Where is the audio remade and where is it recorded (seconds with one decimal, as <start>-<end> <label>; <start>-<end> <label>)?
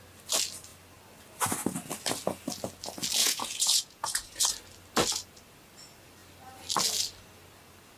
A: 0.0-3.2 recorded; 3.2-4.4 remade; 4.4-8.0 recorded